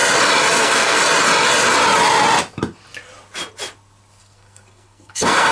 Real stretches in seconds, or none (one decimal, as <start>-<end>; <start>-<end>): 0.0-0.6; 1.0-4.2